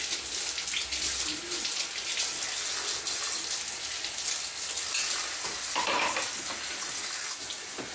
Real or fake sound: real